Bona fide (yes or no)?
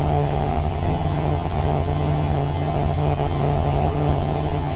no